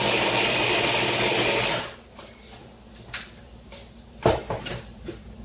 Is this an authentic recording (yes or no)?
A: yes